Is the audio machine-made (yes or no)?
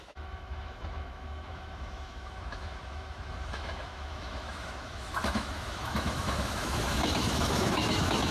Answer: yes